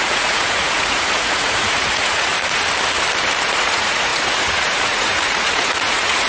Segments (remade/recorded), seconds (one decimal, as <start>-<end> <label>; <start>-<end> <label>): 0.0-2.3 remade; 2.3-3.4 recorded; 3.4-6.3 remade